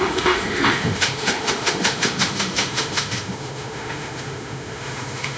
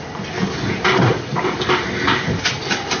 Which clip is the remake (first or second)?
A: first